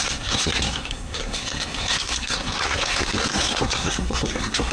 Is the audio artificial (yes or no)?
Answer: yes